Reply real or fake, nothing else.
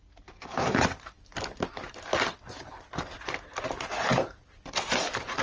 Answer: real